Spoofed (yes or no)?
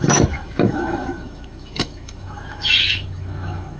yes